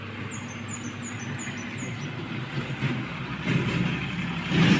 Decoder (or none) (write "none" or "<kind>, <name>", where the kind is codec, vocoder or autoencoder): none